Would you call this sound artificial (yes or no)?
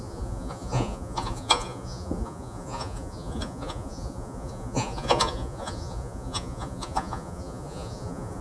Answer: yes